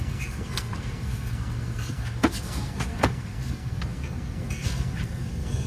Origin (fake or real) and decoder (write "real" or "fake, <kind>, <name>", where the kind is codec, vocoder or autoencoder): fake, codec, SNAC